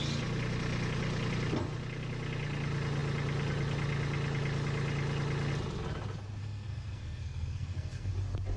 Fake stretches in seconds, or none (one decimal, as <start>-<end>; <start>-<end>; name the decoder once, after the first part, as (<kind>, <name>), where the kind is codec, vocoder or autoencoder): 6.4-8.1 (codec, SNAC)